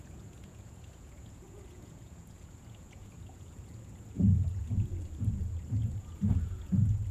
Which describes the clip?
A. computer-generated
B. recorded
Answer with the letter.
A